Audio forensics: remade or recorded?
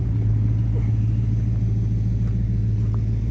recorded